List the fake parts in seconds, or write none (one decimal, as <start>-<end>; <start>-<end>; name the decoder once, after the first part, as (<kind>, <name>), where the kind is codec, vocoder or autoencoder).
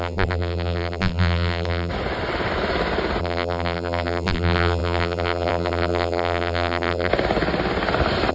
0.0-1.9 (vocoder, BigVGAN v2); 3.2-7.1